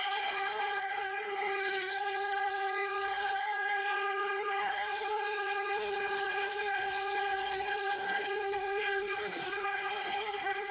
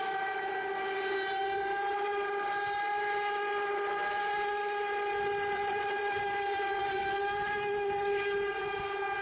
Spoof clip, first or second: first